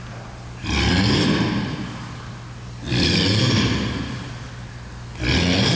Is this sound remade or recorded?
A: recorded